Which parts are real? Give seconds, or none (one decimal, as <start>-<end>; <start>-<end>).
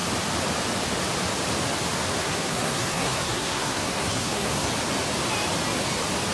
0.0-2.2; 4.7-6.3